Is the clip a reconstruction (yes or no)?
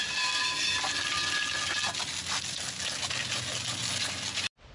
no